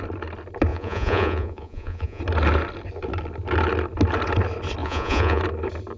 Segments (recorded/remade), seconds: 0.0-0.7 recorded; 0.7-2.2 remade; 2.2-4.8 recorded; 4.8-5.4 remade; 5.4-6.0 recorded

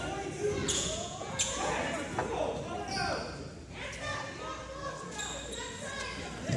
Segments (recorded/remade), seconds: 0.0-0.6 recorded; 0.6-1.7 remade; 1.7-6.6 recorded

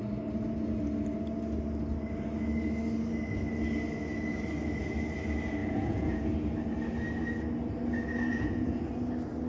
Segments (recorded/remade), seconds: 0.0-5.6 recorded; 5.6-6.3 remade; 6.3-8.3 recorded; 8.3-8.9 remade; 8.9-9.5 recorded

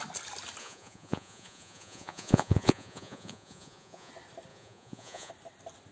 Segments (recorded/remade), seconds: 0.0-0.6 recorded; 0.6-4.1 remade; 4.1-4.5 recorded; 4.5-5.3 remade; 5.3-5.9 recorded

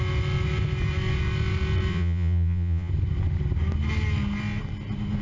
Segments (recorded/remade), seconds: 0.0-1.9 recorded; 1.9-2.9 remade; 2.9-5.2 recorded

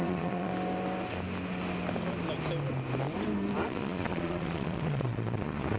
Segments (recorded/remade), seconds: 0.0-0.5 remade; 0.5-3.6 recorded; 3.6-5.8 remade